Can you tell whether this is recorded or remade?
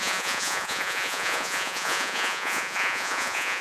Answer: remade